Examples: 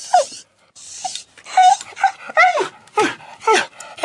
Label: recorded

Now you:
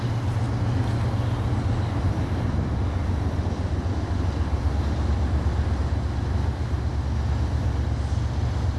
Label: recorded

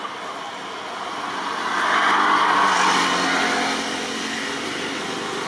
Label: recorded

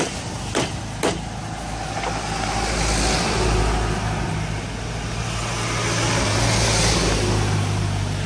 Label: recorded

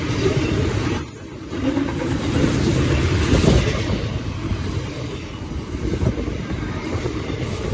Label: remade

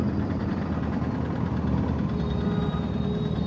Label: recorded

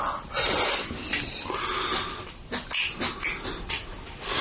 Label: recorded